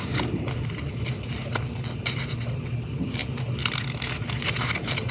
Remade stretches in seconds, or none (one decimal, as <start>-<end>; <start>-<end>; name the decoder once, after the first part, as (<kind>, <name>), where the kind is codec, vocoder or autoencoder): none